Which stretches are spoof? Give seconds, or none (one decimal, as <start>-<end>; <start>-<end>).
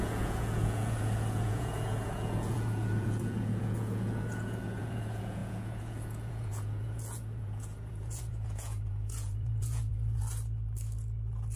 0.0-10.2